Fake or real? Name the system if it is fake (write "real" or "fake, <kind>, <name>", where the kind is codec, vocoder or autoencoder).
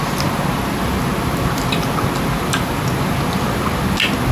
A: real